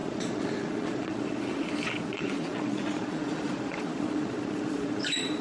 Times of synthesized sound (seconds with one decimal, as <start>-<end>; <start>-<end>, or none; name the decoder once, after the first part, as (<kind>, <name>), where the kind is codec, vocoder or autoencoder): 0.0-1.7 (vocoder, Vocos); 2.1-5.4